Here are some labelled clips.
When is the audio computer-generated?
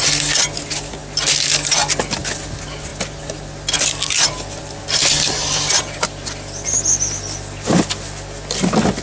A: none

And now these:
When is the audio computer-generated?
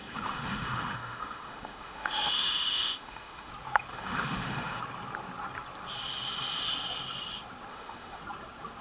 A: 0.0-3.5 (autoencoder, DAC-VAE); 3.9-4.8; 7.7-8.2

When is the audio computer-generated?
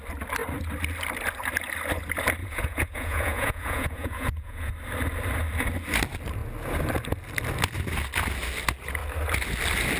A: 2.4-4.7 (vocoder, Vocos)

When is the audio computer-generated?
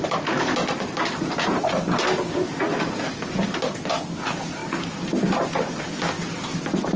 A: none